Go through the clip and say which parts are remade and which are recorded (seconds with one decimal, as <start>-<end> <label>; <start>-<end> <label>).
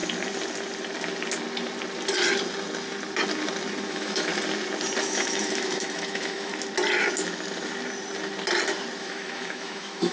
0.0-3.9 recorded; 3.9-4.3 remade; 4.3-5.0 recorded; 5.0-6.5 remade; 6.5-9.0 recorded; 9.0-10.1 remade